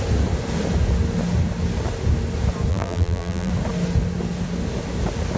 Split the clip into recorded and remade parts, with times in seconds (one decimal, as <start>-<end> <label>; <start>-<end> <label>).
0.0-2.7 recorded; 2.7-3.5 remade; 3.5-5.4 recorded